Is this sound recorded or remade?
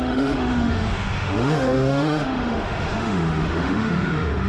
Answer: remade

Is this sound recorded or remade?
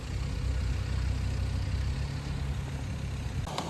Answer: recorded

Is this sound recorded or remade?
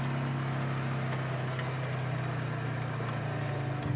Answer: recorded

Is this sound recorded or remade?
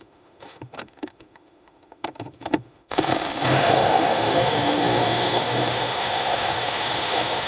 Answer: remade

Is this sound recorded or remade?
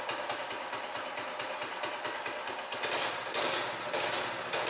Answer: recorded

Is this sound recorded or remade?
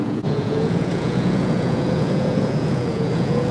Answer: remade